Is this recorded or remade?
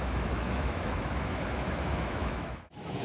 remade